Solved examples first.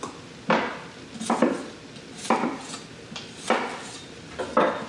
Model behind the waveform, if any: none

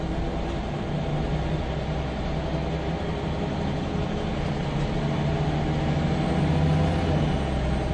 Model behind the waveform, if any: none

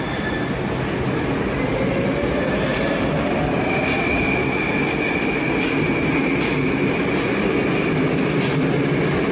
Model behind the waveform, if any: none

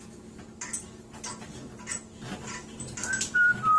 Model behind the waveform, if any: none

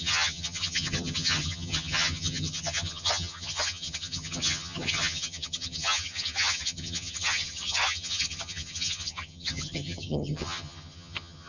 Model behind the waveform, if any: vocoder, HiFi-GAN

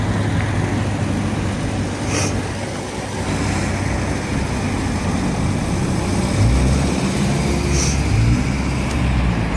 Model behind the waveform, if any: none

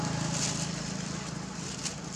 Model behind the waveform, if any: none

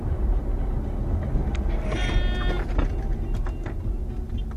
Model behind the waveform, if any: none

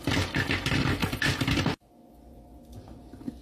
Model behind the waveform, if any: none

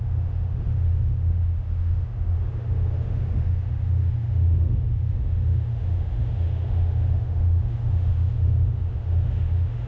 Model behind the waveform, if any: autoencoder, DAC-VAE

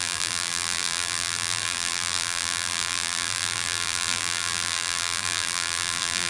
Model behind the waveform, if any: vocoder, BigVGAN v2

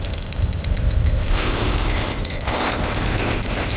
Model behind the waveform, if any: codec, ZipCodec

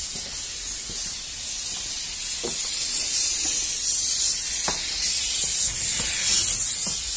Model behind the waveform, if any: none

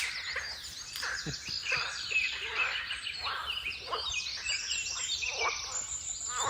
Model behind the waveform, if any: none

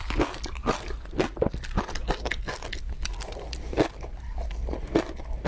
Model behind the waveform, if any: none